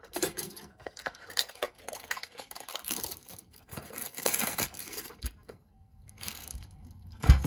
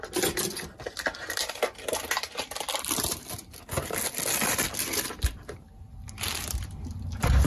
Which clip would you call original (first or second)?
second